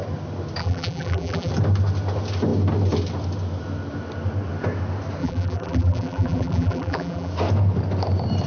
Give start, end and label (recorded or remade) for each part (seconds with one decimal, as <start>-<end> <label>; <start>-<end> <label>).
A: 0.0-0.6 recorded; 0.6-1.5 remade; 1.5-5.2 recorded; 5.2-7.3 remade; 7.3-8.5 recorded